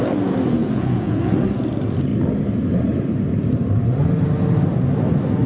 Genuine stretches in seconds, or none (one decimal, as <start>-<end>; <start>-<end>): 0.0-0.6; 1.3-5.5